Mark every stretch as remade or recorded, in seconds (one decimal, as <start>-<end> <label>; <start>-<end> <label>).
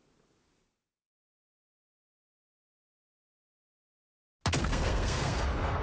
0.0-4.6 recorded; 4.6-5.8 remade